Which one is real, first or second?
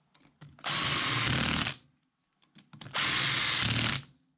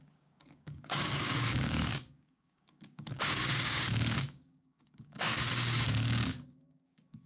first